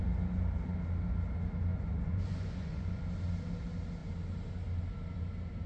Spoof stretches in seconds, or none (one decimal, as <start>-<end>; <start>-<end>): 1.7-3.0